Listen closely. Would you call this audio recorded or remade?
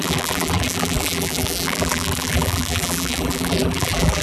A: remade